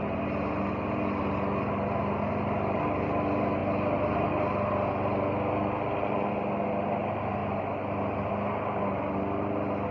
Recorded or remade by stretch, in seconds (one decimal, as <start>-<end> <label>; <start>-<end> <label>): 0.0-9.9 recorded